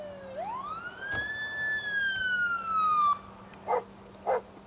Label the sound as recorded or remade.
recorded